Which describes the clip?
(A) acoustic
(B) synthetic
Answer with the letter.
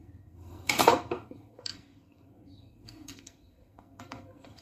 B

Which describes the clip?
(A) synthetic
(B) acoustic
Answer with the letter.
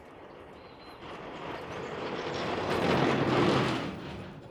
B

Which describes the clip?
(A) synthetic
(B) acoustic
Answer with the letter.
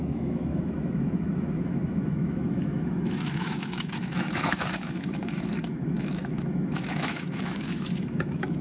A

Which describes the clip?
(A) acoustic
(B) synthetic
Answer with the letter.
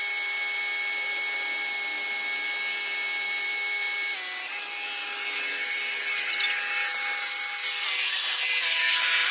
A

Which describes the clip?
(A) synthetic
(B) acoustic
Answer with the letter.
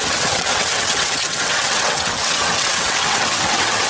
A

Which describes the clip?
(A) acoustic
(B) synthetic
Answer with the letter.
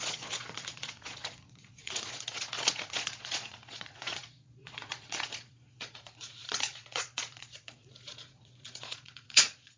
B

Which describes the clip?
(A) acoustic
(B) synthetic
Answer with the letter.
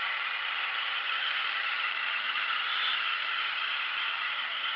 B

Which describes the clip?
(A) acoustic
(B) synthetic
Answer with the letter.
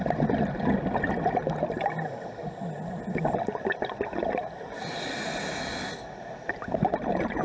A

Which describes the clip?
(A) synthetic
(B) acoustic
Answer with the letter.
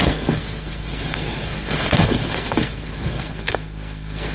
A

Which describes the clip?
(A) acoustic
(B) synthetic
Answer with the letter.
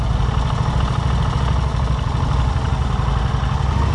A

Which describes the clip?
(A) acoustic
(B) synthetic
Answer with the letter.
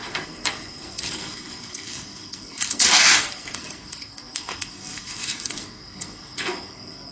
B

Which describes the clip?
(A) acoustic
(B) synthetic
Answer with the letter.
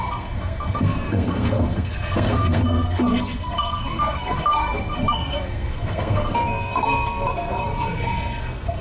B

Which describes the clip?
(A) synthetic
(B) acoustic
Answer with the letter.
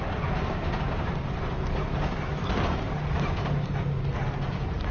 B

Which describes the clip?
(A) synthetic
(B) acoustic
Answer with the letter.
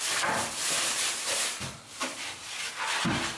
A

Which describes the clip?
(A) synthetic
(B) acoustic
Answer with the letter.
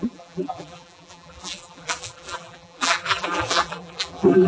A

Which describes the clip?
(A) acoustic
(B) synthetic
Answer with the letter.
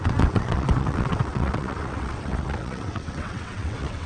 B